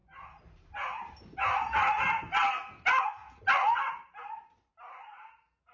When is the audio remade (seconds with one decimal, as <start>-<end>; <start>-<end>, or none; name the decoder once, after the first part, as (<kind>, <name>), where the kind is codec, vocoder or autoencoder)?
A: none